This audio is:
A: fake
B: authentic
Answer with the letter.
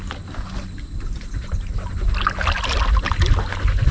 B